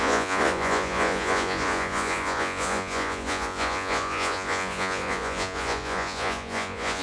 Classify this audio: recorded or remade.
remade